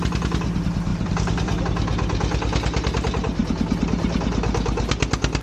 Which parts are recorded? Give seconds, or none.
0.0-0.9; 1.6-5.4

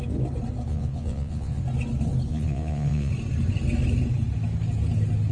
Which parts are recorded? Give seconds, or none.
0.0-0.7; 1.6-2.3; 3.1-5.3

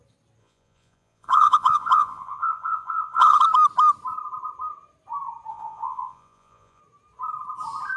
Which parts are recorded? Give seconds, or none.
0.0-0.4; 3.4-5.5; 6.8-8.0

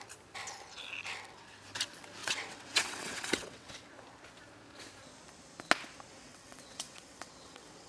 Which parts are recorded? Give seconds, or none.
0.0-2.2; 3.7-6.1

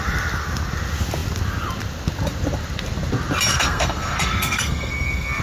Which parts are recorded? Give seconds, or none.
0.0-3.5